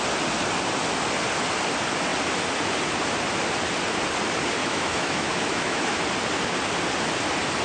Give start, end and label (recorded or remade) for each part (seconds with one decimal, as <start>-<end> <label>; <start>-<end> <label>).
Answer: 0.0-4.6 recorded; 4.6-6.0 remade; 6.0-7.6 recorded